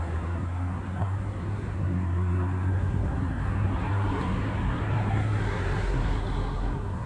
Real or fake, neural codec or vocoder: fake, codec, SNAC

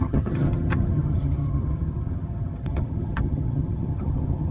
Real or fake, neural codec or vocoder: fake, vocoder, HiFi-GAN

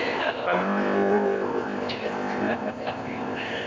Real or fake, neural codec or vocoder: fake, codec, ZipCodec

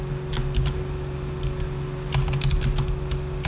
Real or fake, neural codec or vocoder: real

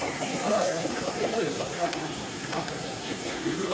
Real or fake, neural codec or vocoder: fake, codec, SNAC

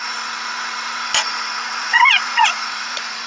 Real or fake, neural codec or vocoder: fake, vocoder, Vocos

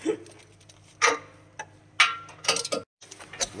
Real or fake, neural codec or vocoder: real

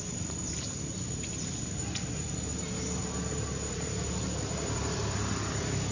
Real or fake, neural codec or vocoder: fake, vocoder, BigVGAN v2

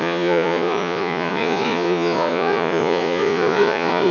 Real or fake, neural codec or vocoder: fake, vocoder, Vocos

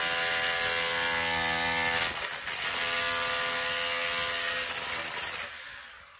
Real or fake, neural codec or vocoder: real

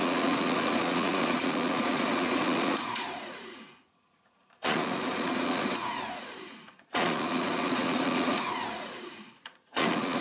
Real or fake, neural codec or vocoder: fake, vocoder, Vocos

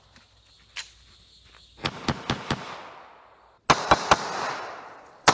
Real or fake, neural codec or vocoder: real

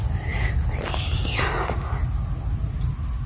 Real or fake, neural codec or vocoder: real